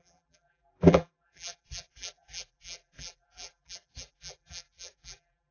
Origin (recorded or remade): remade